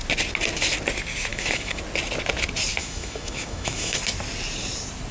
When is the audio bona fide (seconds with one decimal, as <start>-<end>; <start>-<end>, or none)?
0.0-1.3; 1.8-2.8; 4.0-5.1